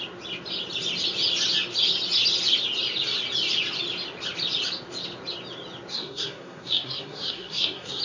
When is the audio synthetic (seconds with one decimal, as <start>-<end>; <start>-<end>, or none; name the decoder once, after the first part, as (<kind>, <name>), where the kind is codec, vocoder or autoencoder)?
5.9-8.0 (codec, SNAC)